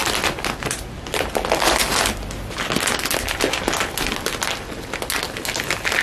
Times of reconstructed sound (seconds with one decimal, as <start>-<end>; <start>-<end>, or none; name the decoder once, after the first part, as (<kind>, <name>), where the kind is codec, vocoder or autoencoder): 0.0-3.4 (vocoder, BigVGAN v2)